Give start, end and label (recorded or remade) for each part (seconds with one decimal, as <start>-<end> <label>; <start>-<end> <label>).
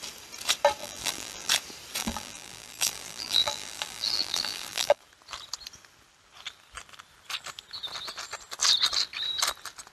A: 0.0-0.8 recorded; 0.8-1.5 remade; 1.5-2.0 recorded; 2.0-5.0 remade; 5.0-9.9 recorded